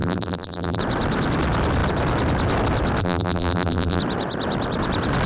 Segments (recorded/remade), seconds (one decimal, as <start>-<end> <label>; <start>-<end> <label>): 0.0-0.8 remade; 0.8-3.0 recorded; 3.0-4.0 remade; 4.0-5.3 recorded